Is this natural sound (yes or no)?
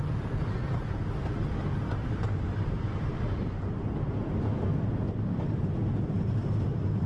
yes